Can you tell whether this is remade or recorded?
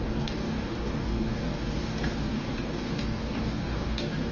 remade